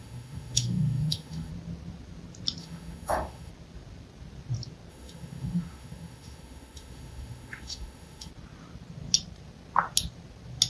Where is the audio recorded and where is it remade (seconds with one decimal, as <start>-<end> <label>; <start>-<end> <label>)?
0.0-1.5 remade; 1.5-2.6 recorded; 2.6-3.5 remade; 3.5-4.9 recorded; 4.9-8.3 remade; 8.3-10.7 recorded